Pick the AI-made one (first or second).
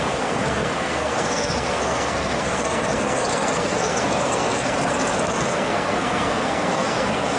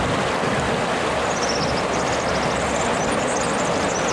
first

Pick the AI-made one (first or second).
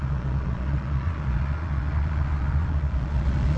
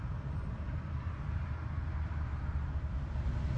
first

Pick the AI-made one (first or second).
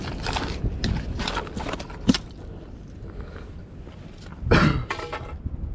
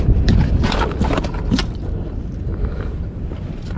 second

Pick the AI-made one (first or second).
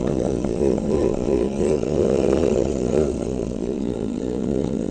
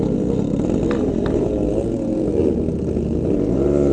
first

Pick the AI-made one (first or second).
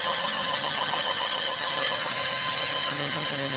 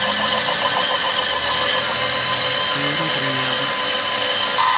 first